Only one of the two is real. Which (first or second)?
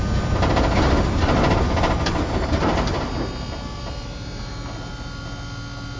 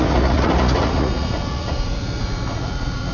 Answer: first